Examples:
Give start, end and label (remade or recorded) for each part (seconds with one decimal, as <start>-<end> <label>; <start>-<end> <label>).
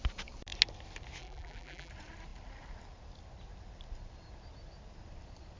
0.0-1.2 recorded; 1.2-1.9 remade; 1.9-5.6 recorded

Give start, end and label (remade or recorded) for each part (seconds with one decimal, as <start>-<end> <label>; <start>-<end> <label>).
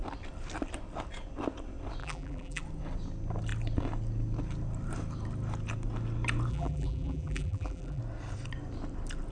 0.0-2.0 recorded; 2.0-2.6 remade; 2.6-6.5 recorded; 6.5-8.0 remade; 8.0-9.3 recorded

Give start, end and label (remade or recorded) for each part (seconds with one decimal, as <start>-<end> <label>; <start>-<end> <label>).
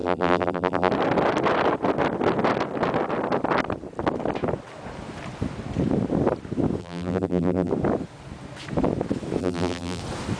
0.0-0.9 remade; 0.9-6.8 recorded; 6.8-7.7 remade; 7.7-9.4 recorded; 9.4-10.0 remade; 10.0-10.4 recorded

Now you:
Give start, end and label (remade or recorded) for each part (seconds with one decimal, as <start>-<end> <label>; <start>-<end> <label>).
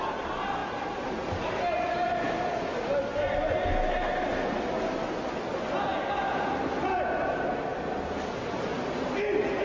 0.0-0.6 recorded; 0.6-2.1 remade; 2.1-8.7 recorded; 8.7-9.6 remade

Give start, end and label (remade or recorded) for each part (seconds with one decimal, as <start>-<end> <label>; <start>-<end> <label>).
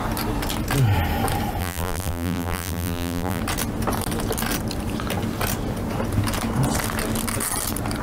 0.0-1.6 recorded; 1.6-3.4 remade; 3.4-8.0 recorded